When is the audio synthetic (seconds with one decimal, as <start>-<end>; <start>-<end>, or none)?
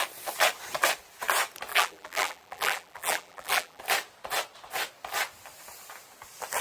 1.7-3.8